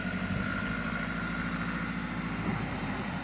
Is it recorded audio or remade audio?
recorded